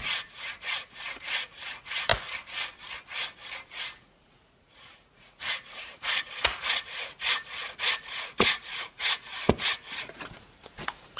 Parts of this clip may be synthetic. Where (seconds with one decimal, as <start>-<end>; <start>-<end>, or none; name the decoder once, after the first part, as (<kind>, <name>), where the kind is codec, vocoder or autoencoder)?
0.0-2.1 (vocoder, Vocos); 4.0-11.2